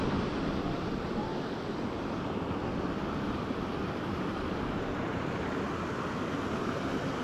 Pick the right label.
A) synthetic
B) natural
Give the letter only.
B